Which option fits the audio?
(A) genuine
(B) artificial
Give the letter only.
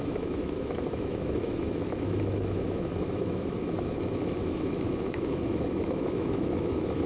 B